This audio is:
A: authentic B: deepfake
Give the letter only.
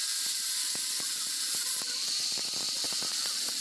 A